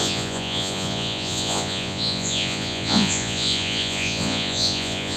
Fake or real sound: fake